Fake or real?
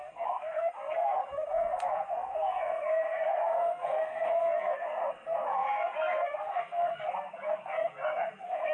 fake